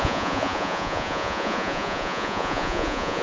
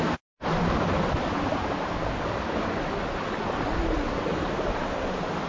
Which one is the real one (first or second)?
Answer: second